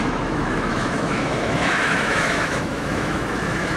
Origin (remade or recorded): remade